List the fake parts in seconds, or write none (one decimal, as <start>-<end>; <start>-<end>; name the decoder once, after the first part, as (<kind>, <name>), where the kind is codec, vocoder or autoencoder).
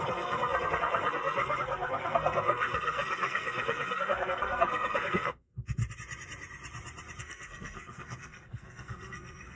0.0-5.8 (codec, SNAC); 7.2-9.6